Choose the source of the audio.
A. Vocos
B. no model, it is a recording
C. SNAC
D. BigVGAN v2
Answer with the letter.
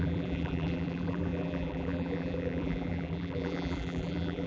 D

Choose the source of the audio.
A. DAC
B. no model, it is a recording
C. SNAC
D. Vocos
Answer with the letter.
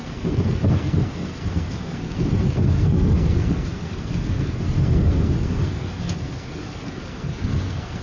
C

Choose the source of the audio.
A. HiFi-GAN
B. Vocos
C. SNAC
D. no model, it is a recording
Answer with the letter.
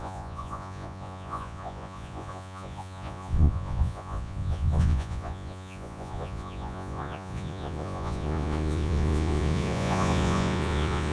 B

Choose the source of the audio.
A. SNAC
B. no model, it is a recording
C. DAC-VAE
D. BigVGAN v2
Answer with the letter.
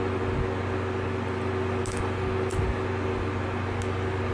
B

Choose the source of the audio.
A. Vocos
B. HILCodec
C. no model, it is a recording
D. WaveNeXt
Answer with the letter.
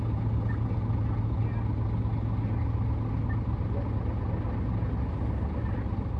C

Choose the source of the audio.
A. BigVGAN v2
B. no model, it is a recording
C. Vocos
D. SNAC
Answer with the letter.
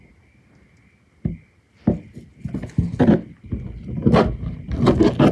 B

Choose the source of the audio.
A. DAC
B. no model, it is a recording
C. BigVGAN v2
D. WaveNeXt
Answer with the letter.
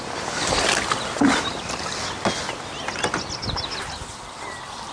B